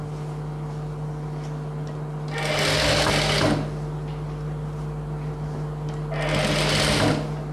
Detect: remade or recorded recorded